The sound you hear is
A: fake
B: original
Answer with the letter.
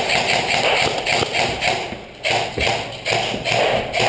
B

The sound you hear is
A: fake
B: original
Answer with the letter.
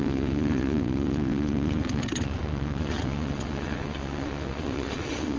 A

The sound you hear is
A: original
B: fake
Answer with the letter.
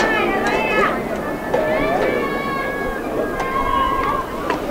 A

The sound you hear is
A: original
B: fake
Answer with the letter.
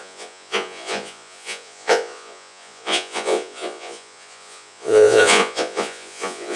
B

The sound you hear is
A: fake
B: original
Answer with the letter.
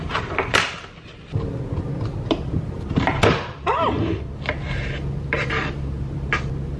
B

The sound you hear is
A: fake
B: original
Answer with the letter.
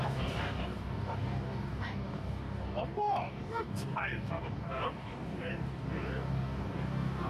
A